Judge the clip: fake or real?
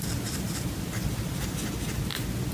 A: real